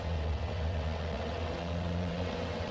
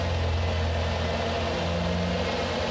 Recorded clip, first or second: second